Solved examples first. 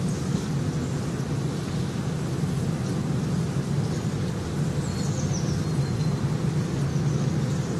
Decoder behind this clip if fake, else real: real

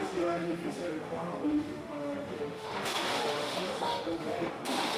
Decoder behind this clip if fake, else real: fake, autoencoder, DAC-VAE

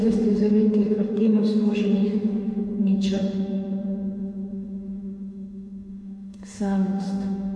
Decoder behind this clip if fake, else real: fake, autoencoder, DAC-VAE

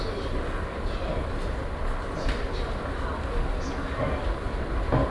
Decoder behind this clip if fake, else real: real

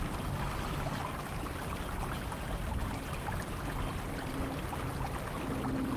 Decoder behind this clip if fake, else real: real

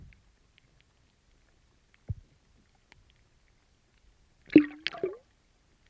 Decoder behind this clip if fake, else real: real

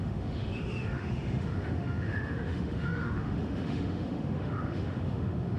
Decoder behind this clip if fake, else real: fake, autoencoder, DAC-VAE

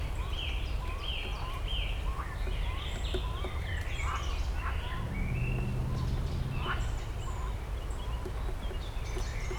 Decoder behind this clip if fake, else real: real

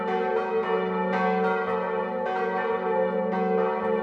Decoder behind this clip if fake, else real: real